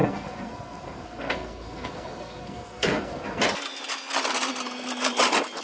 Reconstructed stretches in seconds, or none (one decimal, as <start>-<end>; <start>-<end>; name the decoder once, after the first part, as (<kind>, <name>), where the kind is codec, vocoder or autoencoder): 0.0-3.4 (codec, SNAC)